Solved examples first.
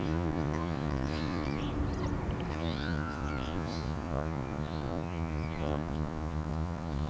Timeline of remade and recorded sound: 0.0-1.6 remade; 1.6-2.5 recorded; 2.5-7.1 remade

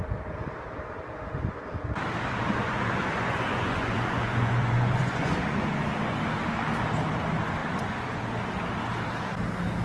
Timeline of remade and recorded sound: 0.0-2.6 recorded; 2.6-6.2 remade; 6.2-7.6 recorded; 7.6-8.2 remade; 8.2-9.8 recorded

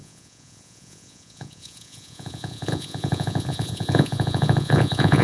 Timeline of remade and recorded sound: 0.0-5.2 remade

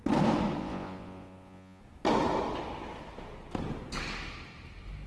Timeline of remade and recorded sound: 0.0-0.6 recorded; 0.6-1.8 remade; 1.8-5.1 recorded

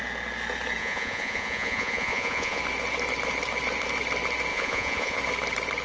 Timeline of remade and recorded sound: 0.0-0.8 recorded; 0.8-2.6 remade; 2.6-4.5 recorded; 4.5-5.2 remade; 5.2-5.8 recorded

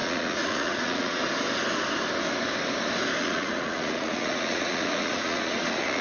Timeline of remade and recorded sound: 0.0-1.2 remade; 1.2-3.2 recorded; 3.2-6.0 remade

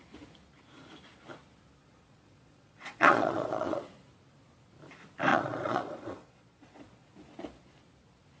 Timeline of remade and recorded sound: 0.0-1.8 recorded; 1.8-3.8 remade; 3.8-5.3 recorded; 5.3-7.1 remade; 7.1-8.4 recorded

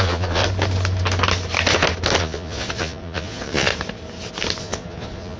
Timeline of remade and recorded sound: 0.0-0.4 remade; 0.4-2.2 recorded; 2.2-3.7 remade; 3.7-4.6 recorded; 4.6-5.4 remade